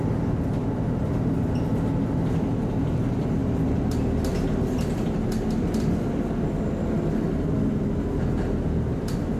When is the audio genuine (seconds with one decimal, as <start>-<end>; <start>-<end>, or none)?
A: 0.0-9.4